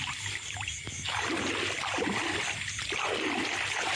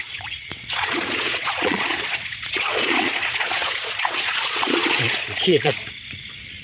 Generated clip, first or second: second